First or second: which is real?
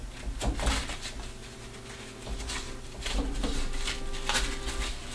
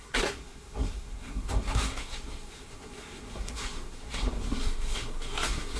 first